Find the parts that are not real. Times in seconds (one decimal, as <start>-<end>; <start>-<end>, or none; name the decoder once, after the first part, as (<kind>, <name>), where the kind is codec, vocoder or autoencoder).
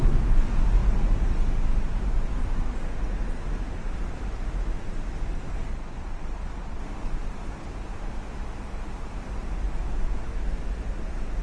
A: 5.7-6.8 (vocoder, Vocos)